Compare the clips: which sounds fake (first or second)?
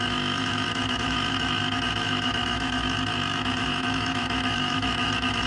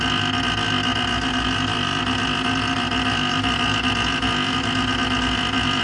first